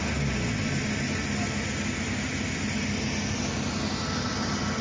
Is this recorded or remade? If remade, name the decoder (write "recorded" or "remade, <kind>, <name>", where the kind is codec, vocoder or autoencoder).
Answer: recorded